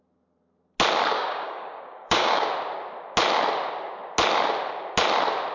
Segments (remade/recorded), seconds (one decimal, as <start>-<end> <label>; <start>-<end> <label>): 0.0-1.1 recorded; 1.1-2.5 remade; 2.5-5.5 recorded